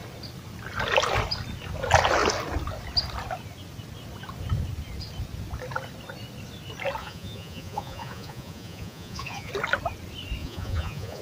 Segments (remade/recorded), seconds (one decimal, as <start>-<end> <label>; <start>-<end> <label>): 0.0-7.0 recorded; 7.0-9.5 remade; 9.5-10.4 recorded; 10.4-11.2 remade